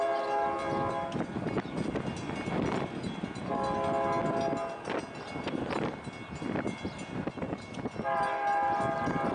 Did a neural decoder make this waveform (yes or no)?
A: no